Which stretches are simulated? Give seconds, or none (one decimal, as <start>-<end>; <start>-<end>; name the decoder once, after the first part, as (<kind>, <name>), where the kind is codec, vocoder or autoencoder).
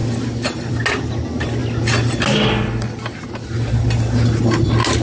none